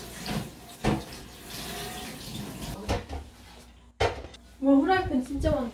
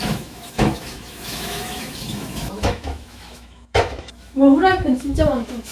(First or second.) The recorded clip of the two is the first